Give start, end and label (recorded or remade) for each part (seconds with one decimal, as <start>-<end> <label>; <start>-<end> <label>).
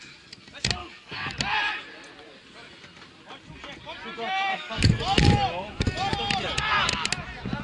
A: 0.0-0.8 recorded; 0.8-1.3 remade; 1.3-4.5 recorded; 4.5-5.0 remade; 5.0-7.6 recorded